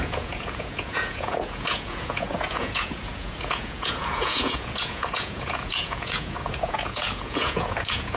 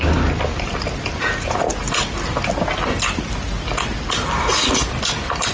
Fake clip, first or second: first